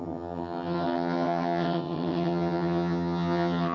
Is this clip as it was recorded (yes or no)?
no